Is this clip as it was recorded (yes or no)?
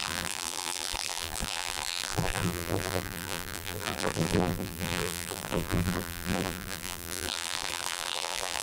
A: no